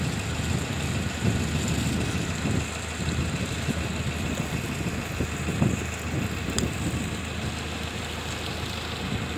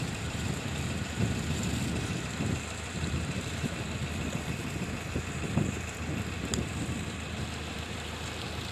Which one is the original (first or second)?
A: first